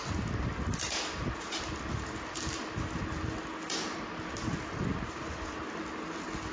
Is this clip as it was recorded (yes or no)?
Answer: yes